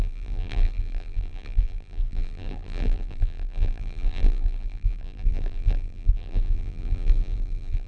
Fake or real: fake